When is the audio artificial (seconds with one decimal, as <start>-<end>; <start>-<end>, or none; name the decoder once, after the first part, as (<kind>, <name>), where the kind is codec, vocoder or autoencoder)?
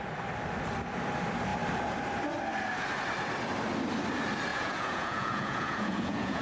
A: 4.5-6.4 (vocoder, Vocos)